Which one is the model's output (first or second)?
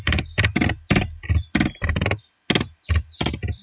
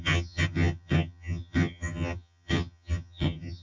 second